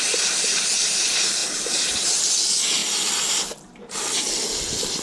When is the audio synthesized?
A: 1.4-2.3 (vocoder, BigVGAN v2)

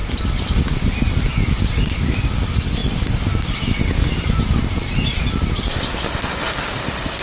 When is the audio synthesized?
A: 2.8-5.2 (vocoder, BigVGAN v2)

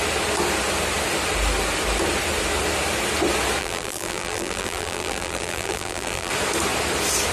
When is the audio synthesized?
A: 3.6-6.3 (vocoder, BigVGAN v2)

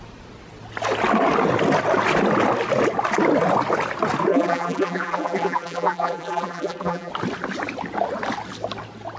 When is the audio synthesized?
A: 4.3-7.1 (vocoder, BigVGAN v2)